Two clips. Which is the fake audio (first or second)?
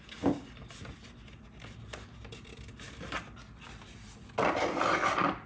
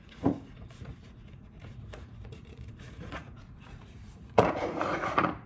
second